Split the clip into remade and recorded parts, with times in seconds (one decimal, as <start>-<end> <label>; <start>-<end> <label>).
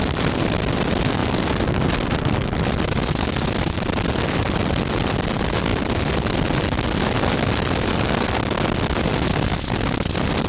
0.0-1.2 remade; 1.2-3.8 recorded; 3.8-5.7 remade; 5.7-9.5 recorded; 9.5-10.5 remade